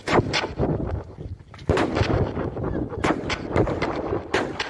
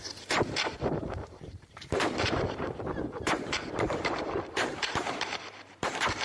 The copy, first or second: second